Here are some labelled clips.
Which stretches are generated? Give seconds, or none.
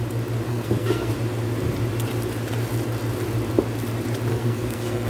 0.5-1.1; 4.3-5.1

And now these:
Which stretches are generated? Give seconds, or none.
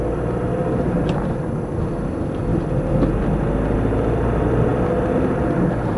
none